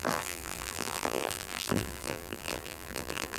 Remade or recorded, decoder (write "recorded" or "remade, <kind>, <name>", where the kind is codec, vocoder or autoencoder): remade, vocoder, BigVGAN v2